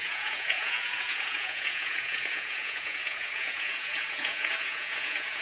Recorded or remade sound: remade